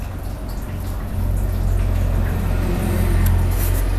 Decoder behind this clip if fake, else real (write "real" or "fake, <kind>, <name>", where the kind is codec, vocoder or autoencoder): real